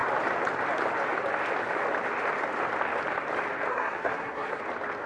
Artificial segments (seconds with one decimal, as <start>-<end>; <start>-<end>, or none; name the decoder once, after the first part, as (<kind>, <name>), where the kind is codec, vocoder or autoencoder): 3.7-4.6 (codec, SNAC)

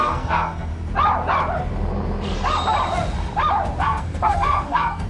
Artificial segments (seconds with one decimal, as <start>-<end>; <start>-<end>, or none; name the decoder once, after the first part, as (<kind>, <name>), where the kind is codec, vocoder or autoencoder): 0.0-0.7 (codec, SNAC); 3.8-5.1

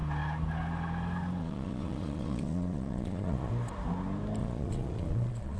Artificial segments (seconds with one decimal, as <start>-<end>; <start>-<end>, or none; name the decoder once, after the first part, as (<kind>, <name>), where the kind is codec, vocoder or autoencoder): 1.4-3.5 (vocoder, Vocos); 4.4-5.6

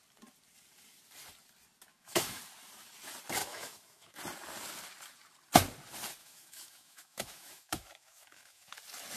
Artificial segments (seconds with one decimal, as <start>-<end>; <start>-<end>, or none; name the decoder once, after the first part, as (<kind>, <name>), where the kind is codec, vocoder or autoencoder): 1.9-2.4 (autoencoder, DAC-VAE); 3.4-4.2; 6.2-8.7

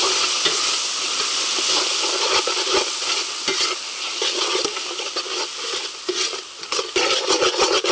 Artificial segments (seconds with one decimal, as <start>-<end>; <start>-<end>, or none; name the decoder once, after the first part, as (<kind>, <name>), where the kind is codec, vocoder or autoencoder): none

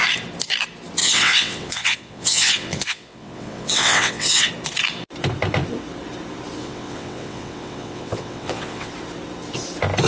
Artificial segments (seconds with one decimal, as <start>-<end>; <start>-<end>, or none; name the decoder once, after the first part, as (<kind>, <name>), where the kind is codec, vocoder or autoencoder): 1.0-4.5 (vocoder, WaveNeXt); 6.6-8.9

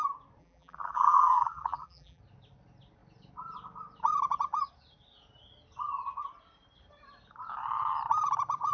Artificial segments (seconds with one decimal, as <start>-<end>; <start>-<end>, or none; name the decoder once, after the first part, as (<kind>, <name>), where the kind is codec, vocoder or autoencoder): 0.4-2.2 (vocoder, BigVGAN v2)